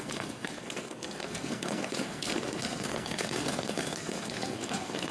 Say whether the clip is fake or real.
fake